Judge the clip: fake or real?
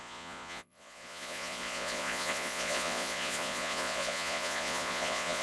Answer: fake